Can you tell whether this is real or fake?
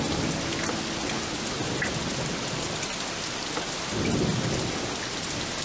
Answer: real